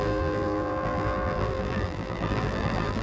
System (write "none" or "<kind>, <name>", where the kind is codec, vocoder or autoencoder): vocoder, BigVGAN v2